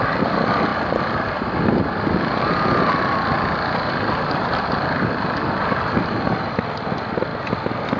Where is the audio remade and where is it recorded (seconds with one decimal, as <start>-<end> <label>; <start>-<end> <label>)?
0.0-7.3 remade; 7.3-8.0 recorded